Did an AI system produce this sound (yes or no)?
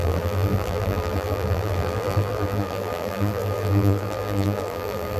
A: yes